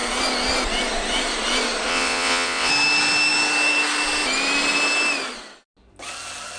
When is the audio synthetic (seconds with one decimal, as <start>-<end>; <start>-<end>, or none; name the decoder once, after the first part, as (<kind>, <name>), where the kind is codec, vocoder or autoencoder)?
1.9-2.7 (vocoder, WaveNeXt)